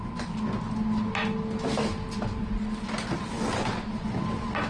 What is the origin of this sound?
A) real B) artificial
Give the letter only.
A